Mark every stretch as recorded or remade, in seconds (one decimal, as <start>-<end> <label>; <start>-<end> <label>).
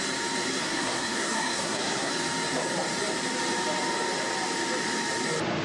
0.0-0.6 recorded; 0.6-2.1 remade; 2.1-5.6 recorded